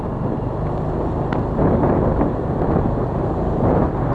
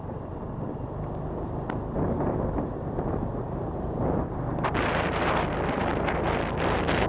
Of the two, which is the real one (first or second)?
first